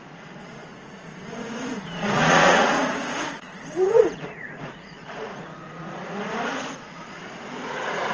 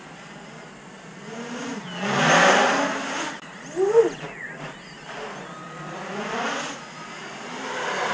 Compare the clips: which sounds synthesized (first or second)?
first